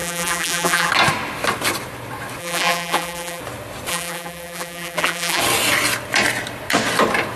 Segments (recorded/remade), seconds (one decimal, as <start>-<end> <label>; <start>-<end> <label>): 0.0-0.9 remade; 0.9-2.4 recorded; 2.4-3.4 remade; 3.4-3.9 recorded; 3.9-5.4 remade; 5.4-7.4 recorded